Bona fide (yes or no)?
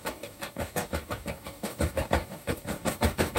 no